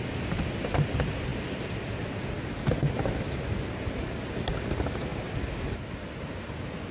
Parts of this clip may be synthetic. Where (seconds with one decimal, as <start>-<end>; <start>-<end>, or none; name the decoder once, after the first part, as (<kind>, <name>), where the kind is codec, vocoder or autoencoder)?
none